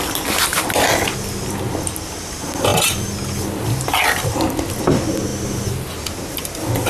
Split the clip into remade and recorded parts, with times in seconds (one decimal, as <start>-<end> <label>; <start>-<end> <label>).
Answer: 0.0-6.9 recorded